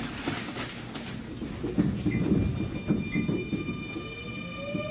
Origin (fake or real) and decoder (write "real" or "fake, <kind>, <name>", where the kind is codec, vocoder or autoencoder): real